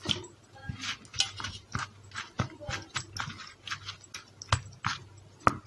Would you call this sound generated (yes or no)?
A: no